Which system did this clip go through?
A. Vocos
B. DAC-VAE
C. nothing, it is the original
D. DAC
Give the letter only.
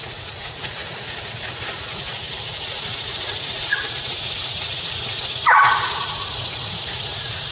A